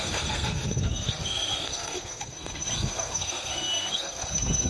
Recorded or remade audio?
remade